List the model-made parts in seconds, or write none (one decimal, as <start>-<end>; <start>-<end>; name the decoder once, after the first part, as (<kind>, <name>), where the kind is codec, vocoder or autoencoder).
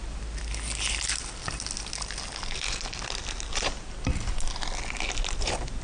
none